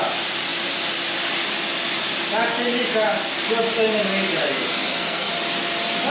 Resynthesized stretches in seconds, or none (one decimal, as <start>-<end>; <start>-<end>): 4.4-5.3